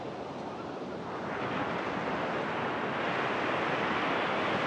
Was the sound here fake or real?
real